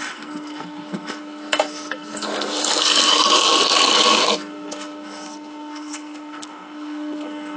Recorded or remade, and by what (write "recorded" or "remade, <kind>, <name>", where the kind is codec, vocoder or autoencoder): remade, codec, SNAC